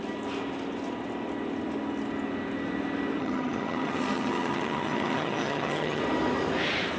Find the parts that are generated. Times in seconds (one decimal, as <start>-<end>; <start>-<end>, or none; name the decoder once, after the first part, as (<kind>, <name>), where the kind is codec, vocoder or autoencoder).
3.2-6.0 (vocoder, HiFi-GAN)